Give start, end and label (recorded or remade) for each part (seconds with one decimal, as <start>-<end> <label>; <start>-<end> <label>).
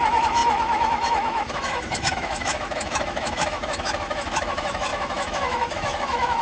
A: 0.0-6.4 remade